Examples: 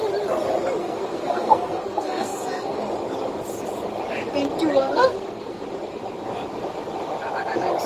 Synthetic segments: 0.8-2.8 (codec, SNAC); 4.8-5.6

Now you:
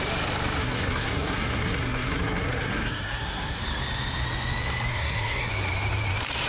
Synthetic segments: 0.6-3.6 (codec, SNAC); 4.9-5.5